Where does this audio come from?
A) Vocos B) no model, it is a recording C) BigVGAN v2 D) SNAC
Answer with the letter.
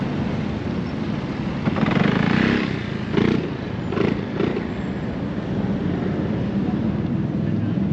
B